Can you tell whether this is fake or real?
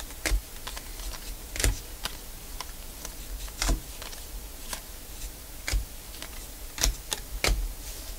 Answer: real